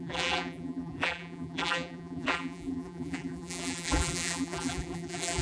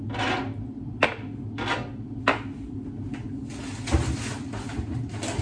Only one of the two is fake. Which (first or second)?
first